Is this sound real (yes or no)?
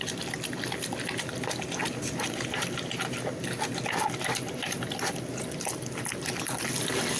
yes